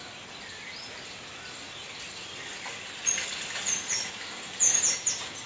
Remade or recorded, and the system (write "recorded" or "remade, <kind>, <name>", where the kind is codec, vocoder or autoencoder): recorded